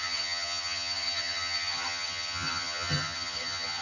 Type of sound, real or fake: fake